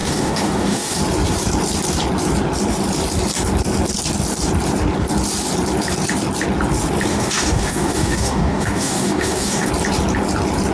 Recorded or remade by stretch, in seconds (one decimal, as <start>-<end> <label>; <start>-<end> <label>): 0.0-1.0 remade; 1.0-7.1 recorded; 7.1-9.7 remade; 9.7-10.7 recorded